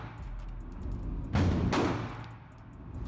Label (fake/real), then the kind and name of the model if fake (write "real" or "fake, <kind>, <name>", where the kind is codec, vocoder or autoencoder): real